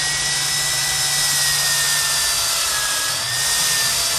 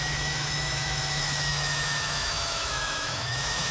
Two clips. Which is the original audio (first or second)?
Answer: first